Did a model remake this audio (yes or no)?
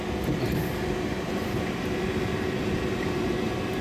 no